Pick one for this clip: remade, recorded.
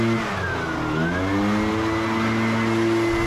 recorded